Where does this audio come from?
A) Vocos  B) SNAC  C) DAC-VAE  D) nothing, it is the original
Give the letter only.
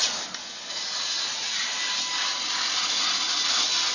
D